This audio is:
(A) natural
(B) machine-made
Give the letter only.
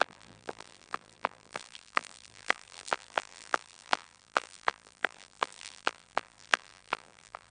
B